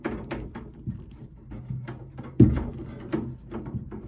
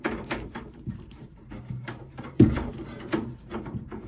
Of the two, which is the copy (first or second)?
second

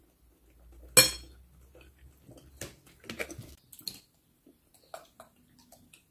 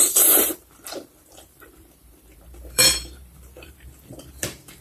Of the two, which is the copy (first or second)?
second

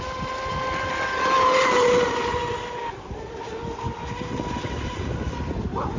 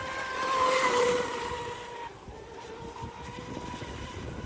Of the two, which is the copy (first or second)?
second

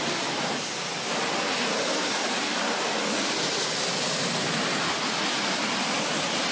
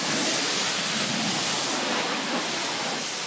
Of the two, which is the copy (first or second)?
second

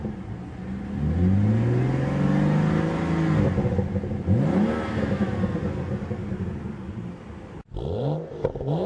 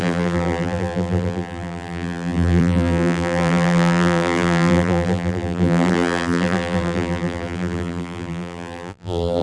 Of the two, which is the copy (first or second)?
second